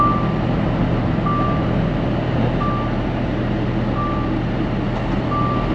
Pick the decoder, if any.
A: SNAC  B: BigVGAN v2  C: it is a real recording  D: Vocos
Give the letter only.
C